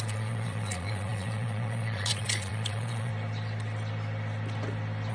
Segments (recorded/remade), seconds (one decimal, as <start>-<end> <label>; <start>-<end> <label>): 0.0-3.1 remade; 3.1-5.1 recorded

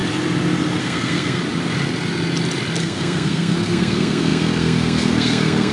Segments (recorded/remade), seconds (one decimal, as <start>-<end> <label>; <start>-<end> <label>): 0.0-0.8 recorded; 0.8-1.4 remade; 1.4-2.8 recorded; 2.8-5.7 remade

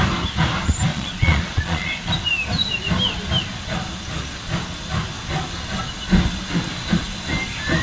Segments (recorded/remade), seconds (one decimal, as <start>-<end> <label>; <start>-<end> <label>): 0.0-0.9 recorded; 0.9-2.1 remade; 2.1-7.8 recorded

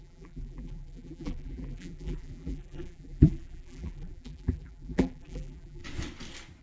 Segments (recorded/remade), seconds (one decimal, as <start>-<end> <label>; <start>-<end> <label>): 0.0-5.8 remade; 5.8-6.6 recorded

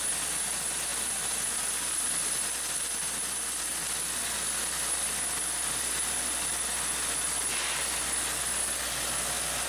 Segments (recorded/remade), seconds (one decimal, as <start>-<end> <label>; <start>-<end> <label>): 0.0-9.7 recorded

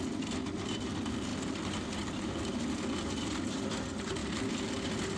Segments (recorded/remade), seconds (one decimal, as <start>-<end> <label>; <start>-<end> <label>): 0.0-5.2 recorded

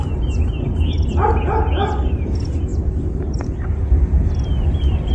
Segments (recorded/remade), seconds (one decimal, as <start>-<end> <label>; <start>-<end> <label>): 0.0-5.1 recorded